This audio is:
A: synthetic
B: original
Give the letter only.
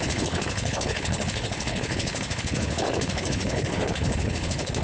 A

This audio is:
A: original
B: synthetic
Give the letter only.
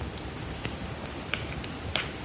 A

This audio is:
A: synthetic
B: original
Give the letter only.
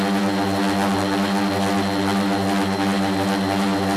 B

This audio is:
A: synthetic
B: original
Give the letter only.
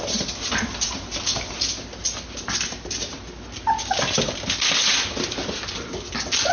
B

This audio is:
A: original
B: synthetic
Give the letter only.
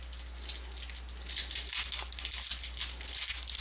A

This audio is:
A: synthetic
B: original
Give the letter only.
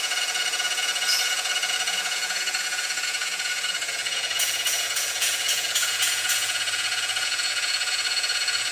A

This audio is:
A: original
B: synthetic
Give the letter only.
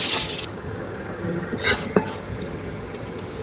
B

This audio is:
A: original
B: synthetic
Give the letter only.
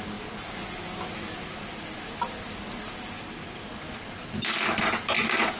A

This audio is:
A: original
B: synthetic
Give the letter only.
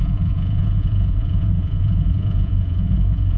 B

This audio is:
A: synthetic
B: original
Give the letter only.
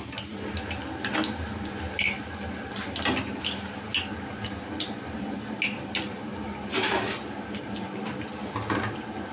B